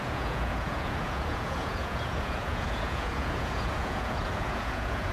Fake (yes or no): yes